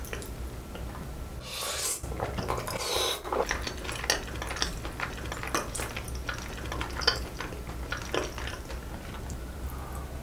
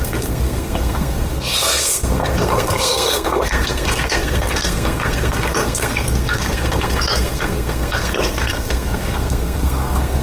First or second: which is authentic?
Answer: first